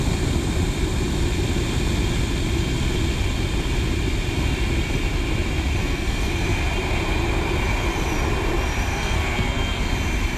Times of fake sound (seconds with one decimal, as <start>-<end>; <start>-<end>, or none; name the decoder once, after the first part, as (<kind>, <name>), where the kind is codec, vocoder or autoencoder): 5.8-6.3 (codec, SNAC); 8.9-9.9